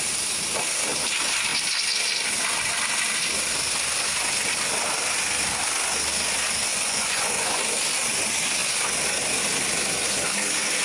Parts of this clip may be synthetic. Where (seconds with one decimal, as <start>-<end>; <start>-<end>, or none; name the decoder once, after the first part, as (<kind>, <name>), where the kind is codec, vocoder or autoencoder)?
6.7-7.6 (vocoder, Vocos)